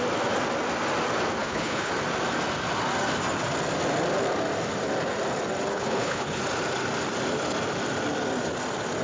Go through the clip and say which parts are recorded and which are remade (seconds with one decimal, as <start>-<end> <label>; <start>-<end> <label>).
0.0-1.4 recorded; 1.4-1.9 remade; 1.9-5.7 recorded; 5.7-6.4 remade; 6.4-9.0 recorded